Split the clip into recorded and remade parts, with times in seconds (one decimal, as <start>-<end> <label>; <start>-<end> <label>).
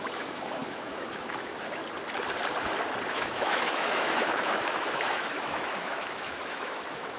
0.0-1.8 remade; 1.8-3.1 recorded; 3.1-7.2 remade